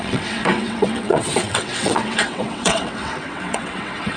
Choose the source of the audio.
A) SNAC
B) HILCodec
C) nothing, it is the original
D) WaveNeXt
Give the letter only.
D